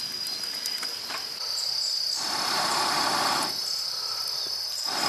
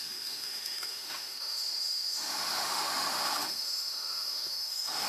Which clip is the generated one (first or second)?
second